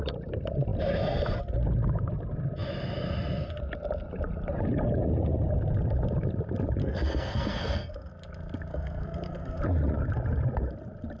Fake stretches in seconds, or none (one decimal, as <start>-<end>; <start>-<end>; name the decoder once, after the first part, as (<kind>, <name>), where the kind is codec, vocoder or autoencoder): 6.8-8.1 (codec, SNAC); 8.7-9.6